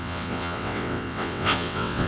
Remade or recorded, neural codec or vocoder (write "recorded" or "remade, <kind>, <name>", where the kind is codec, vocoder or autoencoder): remade, vocoder, WaveNeXt